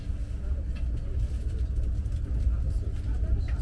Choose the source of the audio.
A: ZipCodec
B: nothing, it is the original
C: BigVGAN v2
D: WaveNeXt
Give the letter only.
B